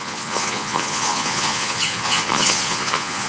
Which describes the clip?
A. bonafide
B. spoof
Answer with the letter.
B